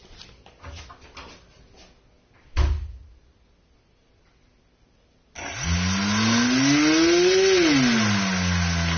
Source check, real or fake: real